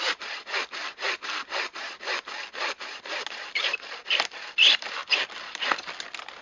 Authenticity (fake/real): real